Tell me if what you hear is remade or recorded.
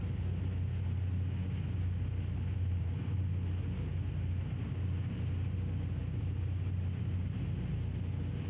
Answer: recorded